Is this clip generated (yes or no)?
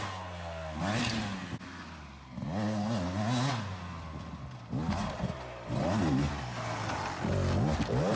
no